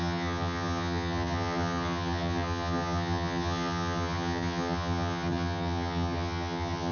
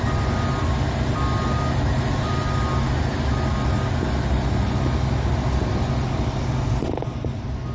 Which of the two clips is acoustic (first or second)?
second